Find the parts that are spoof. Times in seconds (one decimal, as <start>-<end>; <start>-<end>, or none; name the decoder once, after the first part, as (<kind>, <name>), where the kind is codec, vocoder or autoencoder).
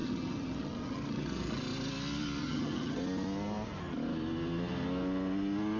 0.0-1.6 (vocoder, HiFi-GAN); 2.4-3.0